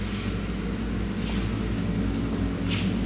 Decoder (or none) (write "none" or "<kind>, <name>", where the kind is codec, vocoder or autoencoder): none